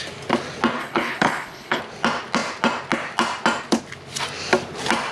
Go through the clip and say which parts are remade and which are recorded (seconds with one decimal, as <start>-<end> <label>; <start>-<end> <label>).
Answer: 0.0-0.8 recorded; 0.8-1.8 remade; 1.8-5.1 recorded